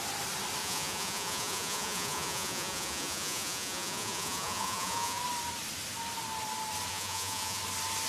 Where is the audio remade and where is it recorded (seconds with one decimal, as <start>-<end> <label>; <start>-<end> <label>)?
0.0-0.6 recorded; 0.6-5.2 remade; 5.2-6.9 recorded; 6.9-7.6 remade; 7.6-8.1 recorded